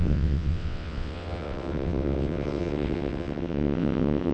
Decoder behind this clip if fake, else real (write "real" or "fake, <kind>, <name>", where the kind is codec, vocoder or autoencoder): fake, vocoder, WaveNeXt